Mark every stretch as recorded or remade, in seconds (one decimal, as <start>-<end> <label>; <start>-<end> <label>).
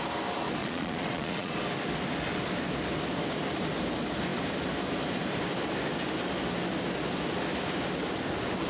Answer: 0.0-0.6 recorded; 0.6-1.5 remade; 1.5-8.7 recorded